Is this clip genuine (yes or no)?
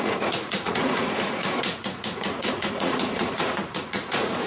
no